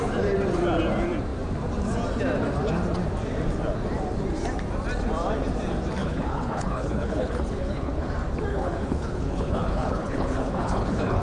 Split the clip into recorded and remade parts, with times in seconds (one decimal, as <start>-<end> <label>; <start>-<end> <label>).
0.0-6.0 recorded; 6.0-8.1 remade; 8.1-8.5 recorded; 8.5-11.2 remade